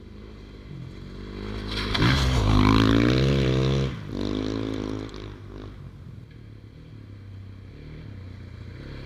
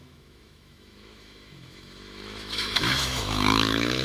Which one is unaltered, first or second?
first